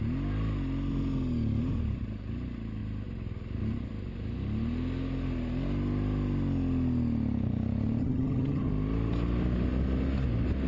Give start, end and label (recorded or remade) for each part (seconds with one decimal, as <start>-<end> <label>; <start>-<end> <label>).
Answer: 0.0-8.0 recorded; 8.0-8.7 remade; 8.7-10.7 recorded